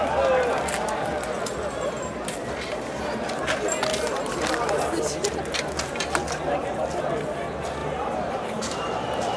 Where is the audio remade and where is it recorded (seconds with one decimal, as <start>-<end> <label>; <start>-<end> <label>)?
0.0-7.8 recorded; 7.8-9.4 remade